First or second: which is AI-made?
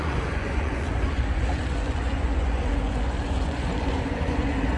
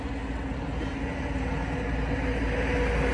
first